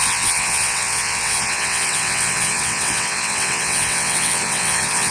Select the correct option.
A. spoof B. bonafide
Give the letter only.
A